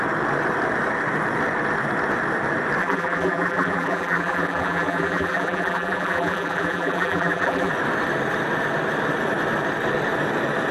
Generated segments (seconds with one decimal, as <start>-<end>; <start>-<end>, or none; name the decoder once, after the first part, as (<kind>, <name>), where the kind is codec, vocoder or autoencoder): 2.8-7.7 (vocoder, BigVGAN v2)